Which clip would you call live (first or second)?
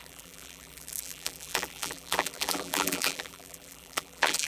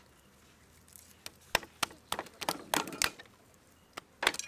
second